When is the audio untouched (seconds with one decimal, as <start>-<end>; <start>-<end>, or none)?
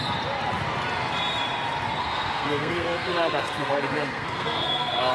0.0-2.0